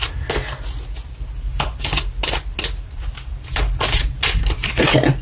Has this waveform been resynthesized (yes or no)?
no